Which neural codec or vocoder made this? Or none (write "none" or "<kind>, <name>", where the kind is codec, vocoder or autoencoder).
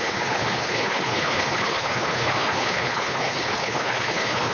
codec, HILCodec